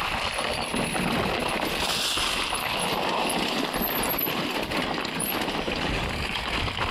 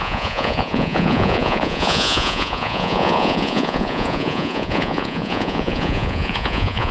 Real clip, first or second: first